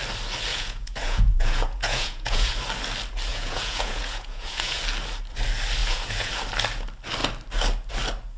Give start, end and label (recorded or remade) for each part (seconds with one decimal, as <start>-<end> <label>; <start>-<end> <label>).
0.0-0.5 recorded; 0.5-2.5 remade; 2.5-3.3 recorded; 3.3-4.8 remade; 4.8-5.8 recorded; 5.8-6.3 remade; 6.3-8.4 recorded